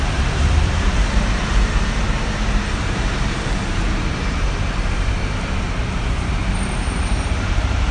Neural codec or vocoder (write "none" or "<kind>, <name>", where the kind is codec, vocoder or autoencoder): vocoder, BigVGAN v2